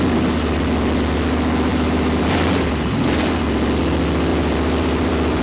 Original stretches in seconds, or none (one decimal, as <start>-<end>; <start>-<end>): 0.0-1.7; 3.4-4.3